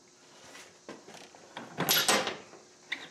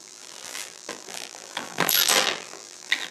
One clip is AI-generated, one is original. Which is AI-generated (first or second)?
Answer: second